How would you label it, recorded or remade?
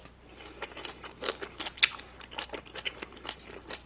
recorded